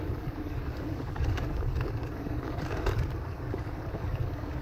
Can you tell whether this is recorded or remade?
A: remade